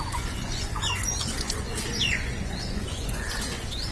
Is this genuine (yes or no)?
no